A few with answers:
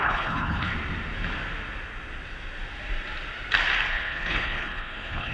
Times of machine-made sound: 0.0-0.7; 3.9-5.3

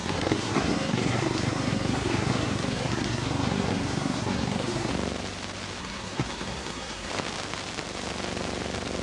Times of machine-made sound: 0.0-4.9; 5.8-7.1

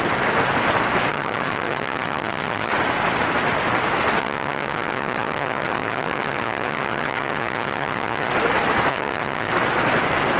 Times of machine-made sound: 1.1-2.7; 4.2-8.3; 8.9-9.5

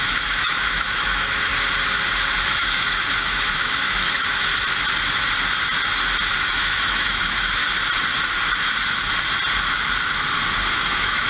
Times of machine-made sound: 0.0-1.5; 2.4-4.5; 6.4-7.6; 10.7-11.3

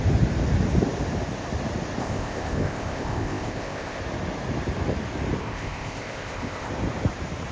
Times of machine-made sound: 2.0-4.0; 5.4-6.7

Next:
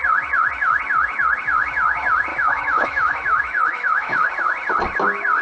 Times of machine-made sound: 2.3-4.3

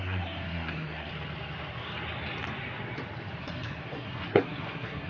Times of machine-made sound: 0.0-1.1; 3.4-5.1

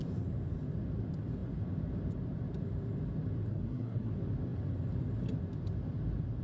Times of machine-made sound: 3.5-4.1